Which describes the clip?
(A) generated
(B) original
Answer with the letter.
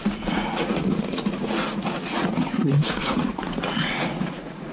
A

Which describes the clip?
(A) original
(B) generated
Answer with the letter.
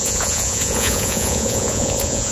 B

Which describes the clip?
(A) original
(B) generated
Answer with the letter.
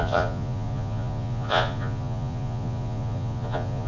B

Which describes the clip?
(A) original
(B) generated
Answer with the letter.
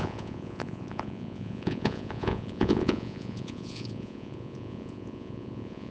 B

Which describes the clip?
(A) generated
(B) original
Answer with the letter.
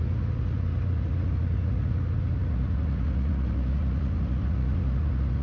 A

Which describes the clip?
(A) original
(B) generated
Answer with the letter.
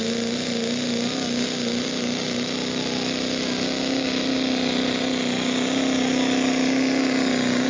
A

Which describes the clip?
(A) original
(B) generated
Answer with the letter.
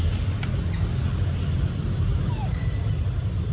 A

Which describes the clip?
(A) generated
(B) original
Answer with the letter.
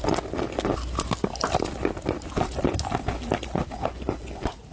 B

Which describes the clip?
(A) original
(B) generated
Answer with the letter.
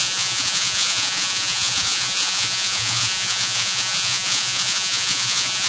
B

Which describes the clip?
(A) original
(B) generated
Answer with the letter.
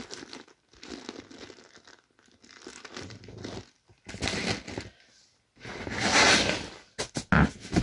A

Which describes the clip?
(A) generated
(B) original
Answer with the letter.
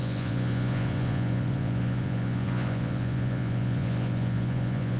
A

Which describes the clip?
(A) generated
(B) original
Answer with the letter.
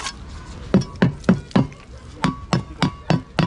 B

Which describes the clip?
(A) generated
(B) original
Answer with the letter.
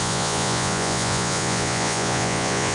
A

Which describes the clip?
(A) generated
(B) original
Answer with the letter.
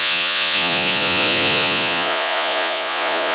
A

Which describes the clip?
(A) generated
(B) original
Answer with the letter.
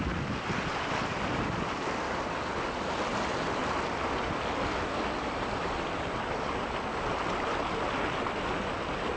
B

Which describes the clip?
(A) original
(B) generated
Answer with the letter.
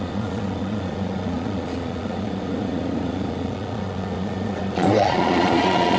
B